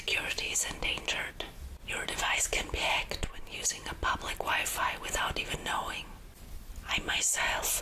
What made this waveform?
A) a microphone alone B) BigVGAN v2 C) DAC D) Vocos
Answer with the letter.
A